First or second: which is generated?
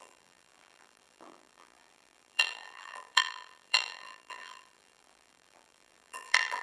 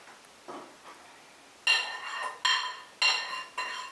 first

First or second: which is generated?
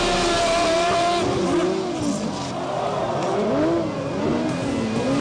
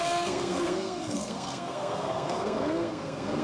second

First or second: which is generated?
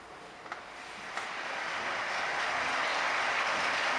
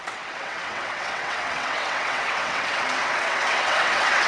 second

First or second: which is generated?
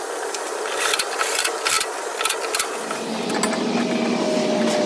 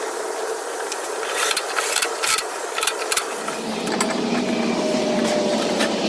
second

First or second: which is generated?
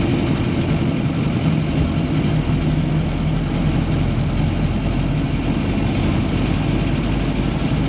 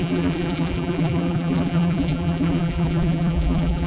second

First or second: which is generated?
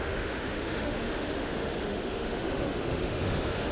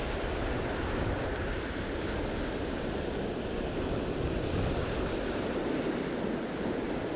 first